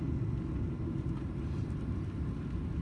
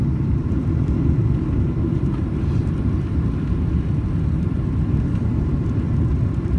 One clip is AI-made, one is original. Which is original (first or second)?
first